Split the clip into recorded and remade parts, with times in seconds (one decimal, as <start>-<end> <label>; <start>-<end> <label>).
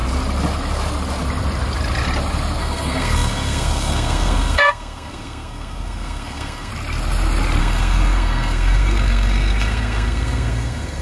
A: 0.0-2.6 recorded; 2.6-6.7 remade; 6.7-7.6 recorded; 7.6-11.0 remade